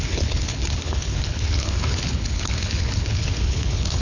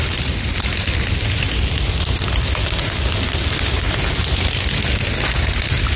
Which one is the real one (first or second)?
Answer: second